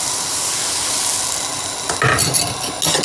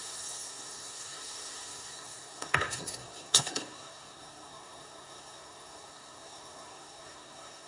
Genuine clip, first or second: first